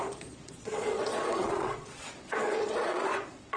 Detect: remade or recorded remade